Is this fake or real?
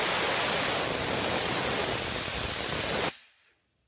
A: real